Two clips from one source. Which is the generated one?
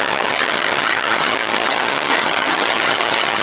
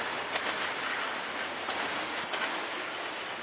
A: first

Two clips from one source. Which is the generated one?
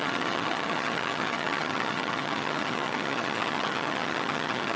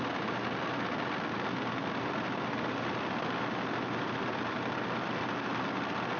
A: first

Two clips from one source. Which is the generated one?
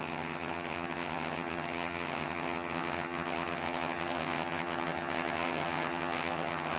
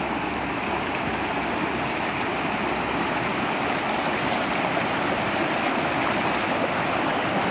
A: first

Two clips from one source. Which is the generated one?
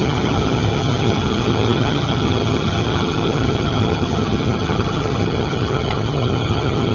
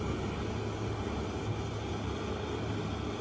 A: first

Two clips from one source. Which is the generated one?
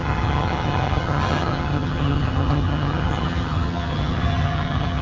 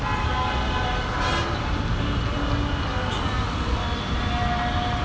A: first